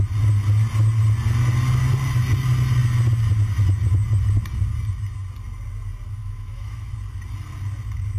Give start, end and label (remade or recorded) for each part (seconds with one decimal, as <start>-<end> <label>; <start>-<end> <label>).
0.0-6.2 recorded; 6.2-6.9 remade; 6.9-8.2 recorded